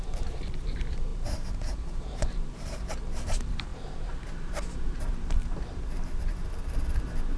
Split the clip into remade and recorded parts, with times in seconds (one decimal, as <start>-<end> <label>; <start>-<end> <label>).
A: 0.0-7.4 remade